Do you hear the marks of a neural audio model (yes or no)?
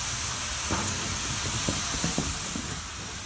no